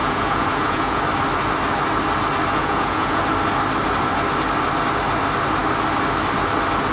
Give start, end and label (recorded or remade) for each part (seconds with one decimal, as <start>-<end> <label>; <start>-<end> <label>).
0.0-1.0 remade; 1.0-2.6 recorded; 2.6-3.2 remade; 3.2-6.9 recorded